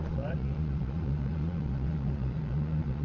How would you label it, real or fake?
fake